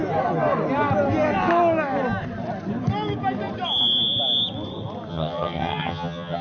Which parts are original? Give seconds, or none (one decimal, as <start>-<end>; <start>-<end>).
0.0-5.1